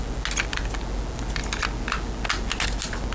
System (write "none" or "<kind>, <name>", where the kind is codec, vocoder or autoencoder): none